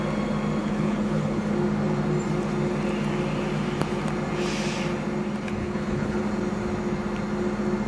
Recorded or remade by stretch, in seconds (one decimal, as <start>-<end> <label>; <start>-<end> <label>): 0.0-0.6 recorded; 0.6-1.4 remade; 1.4-5.6 recorded; 5.6-6.2 remade; 6.2-7.9 recorded